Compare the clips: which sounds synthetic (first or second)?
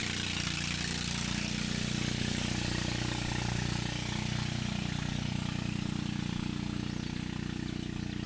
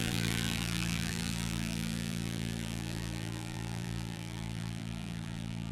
second